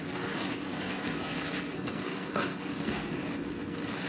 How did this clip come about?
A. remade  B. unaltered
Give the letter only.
A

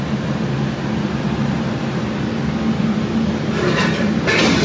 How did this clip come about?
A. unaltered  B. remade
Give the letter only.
A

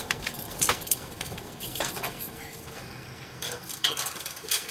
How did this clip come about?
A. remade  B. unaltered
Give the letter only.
A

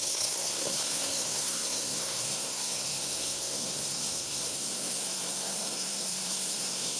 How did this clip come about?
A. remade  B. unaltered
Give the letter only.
A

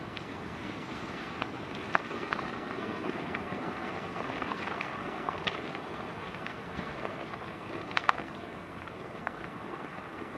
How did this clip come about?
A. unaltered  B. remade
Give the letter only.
B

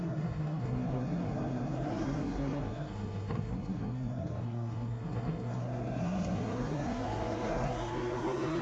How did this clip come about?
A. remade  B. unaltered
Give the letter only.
A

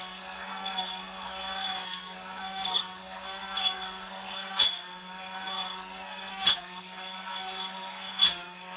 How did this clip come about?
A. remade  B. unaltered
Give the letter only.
A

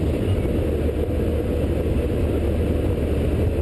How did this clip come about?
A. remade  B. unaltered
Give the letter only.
B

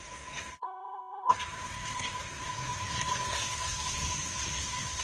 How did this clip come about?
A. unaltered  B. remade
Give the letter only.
B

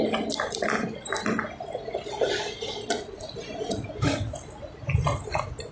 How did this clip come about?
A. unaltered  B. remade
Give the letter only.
A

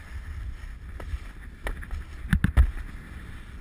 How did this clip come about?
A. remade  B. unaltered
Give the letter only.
B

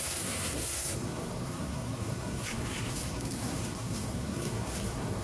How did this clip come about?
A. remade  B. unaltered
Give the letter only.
A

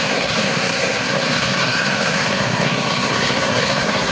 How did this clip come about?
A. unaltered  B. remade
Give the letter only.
B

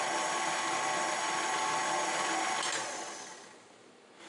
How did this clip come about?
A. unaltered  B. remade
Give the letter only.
A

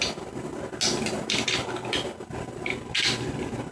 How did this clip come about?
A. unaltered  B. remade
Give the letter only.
A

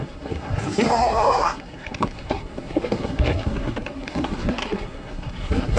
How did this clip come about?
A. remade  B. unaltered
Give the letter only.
A